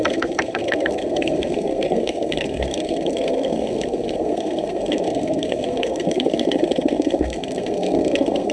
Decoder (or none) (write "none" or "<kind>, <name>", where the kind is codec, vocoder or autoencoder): codec, SNAC